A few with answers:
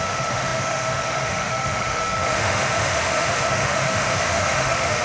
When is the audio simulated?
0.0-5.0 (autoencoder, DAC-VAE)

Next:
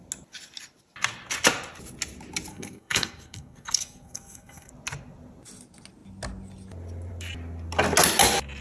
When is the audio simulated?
2.5-4.7 (codec, SNAC)

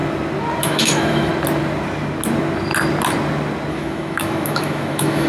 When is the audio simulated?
0.6-1.3 (autoencoder, DAC-VAE); 3.7-5.3

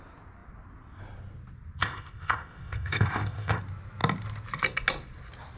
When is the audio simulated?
1.8-3.6 (codec, ZipCodec)

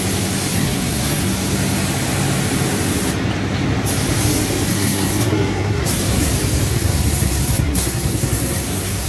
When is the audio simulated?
0.5-1.2 (codec, SNAC); 4.7-6.3; 6.7-9.1

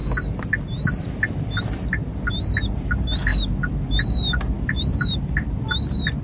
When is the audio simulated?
none